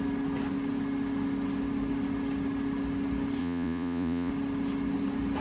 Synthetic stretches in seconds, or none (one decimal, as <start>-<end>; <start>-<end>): 3.4-4.3